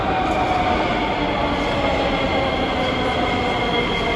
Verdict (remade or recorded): recorded